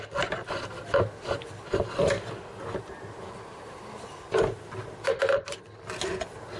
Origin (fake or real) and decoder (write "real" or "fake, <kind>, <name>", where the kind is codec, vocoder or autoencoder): real